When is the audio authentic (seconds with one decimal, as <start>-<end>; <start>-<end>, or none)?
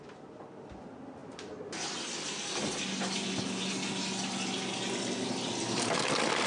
0.0-6.5